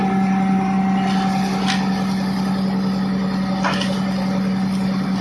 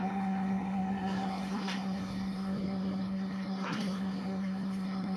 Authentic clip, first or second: first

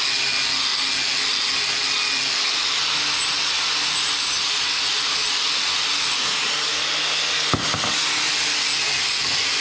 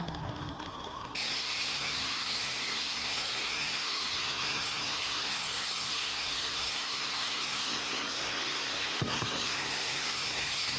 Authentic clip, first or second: first